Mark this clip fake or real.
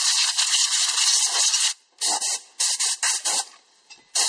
real